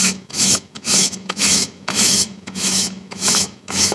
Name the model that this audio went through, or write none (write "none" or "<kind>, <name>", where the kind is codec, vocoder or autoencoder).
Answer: autoencoder, DAC-VAE